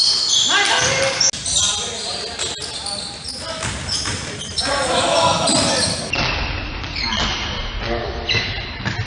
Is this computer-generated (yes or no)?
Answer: no